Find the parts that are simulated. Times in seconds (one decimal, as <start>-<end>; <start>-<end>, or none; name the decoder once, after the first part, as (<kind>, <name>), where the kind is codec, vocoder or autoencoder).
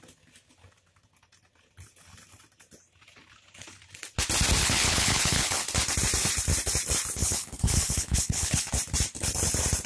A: 4.6-5.6 (codec, HILCodec); 7.2-8.7